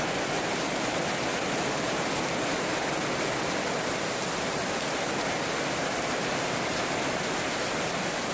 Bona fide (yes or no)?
yes